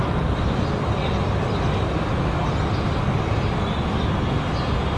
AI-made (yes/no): no